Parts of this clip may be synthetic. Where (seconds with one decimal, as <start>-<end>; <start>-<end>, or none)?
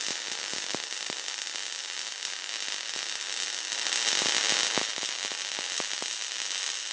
none